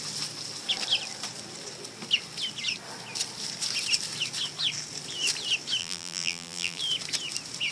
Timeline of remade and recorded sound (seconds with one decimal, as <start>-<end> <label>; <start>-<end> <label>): 0.0-5.8 recorded; 5.8-6.8 remade; 6.8-7.7 recorded